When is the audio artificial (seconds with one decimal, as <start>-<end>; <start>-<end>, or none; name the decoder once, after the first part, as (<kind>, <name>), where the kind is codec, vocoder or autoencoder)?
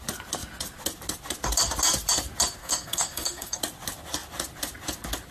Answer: 2.6-3.6 (codec, SNAC)